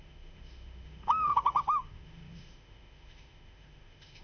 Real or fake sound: fake